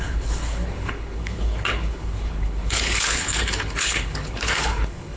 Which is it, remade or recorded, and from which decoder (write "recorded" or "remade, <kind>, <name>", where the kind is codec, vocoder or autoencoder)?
remade, codec, HILCodec